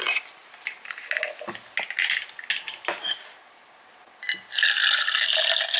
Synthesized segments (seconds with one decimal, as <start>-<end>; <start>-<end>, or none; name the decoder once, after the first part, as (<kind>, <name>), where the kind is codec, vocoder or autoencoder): none